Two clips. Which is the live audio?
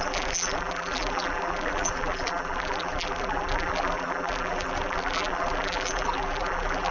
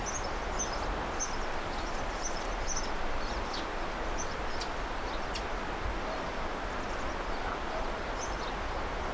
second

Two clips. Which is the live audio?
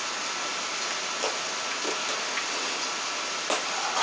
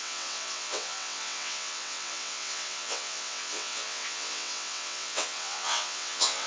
first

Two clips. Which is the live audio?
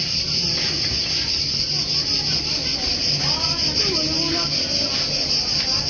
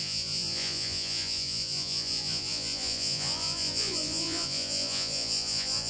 first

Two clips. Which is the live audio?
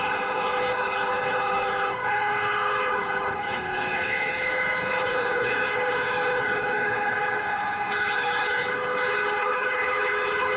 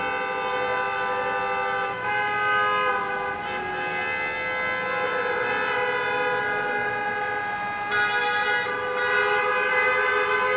second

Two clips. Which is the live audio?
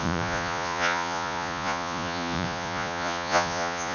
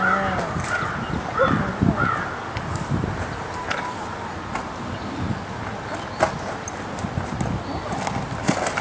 second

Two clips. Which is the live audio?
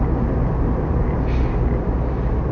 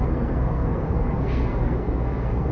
first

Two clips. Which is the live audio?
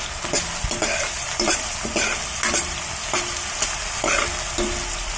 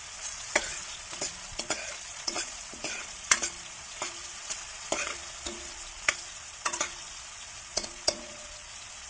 first